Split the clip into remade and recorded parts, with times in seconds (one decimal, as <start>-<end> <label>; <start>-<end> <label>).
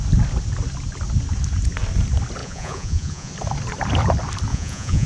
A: 0.0-2.4 recorded; 2.4-3.3 remade; 3.3-4.5 recorded; 4.5-5.1 remade